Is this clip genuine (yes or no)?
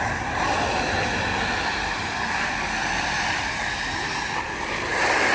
yes